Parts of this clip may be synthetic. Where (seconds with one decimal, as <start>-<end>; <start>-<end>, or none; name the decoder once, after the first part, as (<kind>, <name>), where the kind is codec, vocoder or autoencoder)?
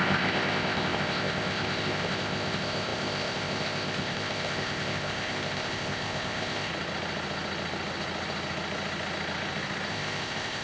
0.0-6.7 (codec, ZipCodec); 9.9-10.6